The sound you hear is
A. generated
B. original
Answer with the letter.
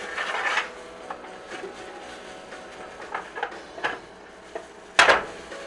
B